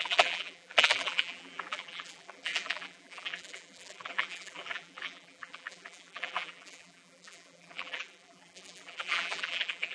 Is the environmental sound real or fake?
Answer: fake